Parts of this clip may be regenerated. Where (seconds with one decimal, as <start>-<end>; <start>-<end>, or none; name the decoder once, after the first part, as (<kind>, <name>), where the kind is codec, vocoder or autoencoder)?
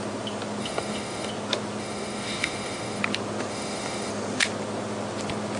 0.6-1.3 (autoencoder, DAC-VAE); 1.8-3.0; 3.5-4.1